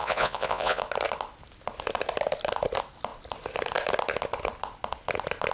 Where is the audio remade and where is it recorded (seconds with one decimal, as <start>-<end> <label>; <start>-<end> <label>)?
0.0-0.8 remade; 0.8-5.5 recorded